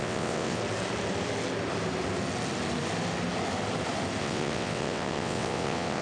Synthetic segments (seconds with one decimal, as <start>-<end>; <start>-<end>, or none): 0.0-0.6; 4.2-6.0